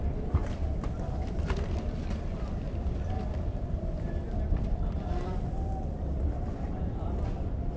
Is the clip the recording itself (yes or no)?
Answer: no